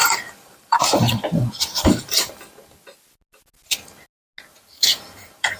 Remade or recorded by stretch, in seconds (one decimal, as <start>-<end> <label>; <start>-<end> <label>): 0.0-2.3 remade; 2.3-4.9 recorded; 4.9-5.6 remade